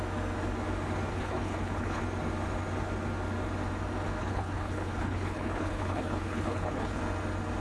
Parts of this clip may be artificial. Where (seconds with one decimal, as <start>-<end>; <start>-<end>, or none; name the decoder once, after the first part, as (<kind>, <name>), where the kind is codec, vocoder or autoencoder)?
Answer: 1.1-2.0 (codec, HILCodec); 4.2-7.0